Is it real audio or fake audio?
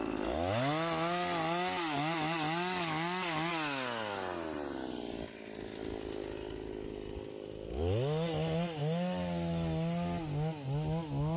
real